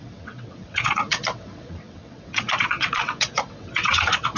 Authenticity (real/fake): fake